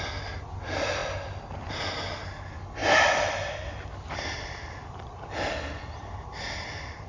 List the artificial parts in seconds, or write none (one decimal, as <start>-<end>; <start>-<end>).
none